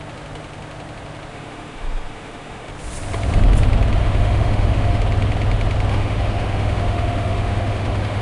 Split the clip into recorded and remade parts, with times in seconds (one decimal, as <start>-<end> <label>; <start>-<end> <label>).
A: 0.0-1.3 recorded; 1.3-2.7 remade; 2.7-4.0 recorded; 4.0-5.0 remade; 5.0-5.9 recorded; 5.9-8.2 remade